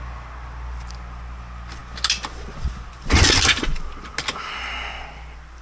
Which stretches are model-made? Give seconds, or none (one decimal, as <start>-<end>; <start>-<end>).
none